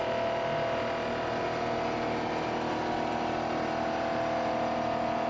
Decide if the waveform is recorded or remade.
recorded